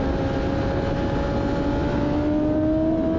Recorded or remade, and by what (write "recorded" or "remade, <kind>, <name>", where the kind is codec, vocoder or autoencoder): recorded